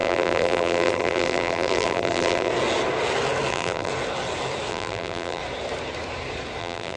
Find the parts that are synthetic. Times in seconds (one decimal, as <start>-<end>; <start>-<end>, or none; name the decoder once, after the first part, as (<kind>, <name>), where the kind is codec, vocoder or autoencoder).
0.0-2.5 (vocoder, BigVGAN v2); 3.5-3.9; 4.7-5.4; 6.6-7.0